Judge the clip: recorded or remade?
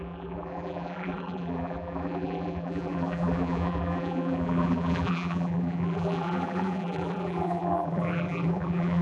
remade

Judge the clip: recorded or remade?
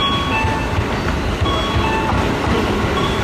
recorded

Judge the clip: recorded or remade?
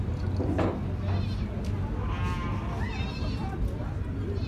recorded